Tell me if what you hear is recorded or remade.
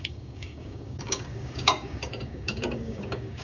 remade